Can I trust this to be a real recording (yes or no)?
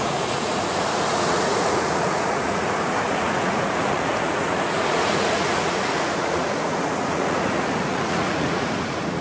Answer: no